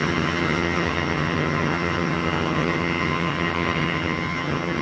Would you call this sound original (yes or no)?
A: no